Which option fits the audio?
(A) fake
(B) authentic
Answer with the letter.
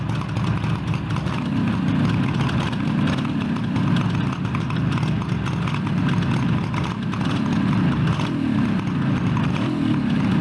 B